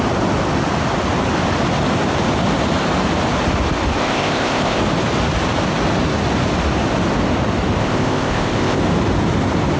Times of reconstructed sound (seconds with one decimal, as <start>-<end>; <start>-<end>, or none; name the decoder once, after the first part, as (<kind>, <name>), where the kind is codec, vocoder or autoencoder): 4.0-4.8 (codec, ZipCodec); 7.8-8.8